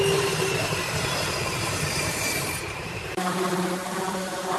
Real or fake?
fake